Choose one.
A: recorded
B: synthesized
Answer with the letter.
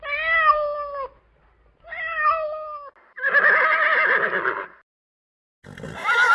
A